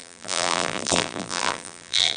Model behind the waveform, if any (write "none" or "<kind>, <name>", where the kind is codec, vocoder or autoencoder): vocoder, BigVGAN v2